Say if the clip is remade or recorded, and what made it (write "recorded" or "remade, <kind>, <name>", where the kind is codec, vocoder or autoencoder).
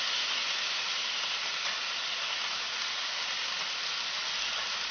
recorded